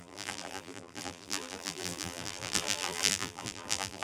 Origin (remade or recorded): remade